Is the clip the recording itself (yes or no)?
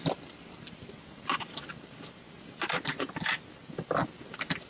yes